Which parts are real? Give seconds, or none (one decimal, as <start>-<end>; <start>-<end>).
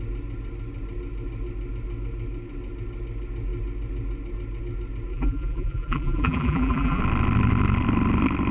0.0-5.1; 7.0-8.5